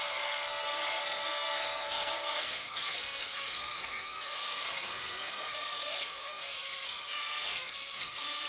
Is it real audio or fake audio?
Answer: fake